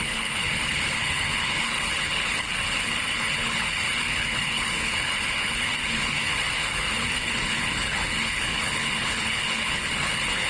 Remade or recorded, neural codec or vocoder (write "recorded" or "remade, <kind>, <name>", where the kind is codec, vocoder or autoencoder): remade, codec, HILCodec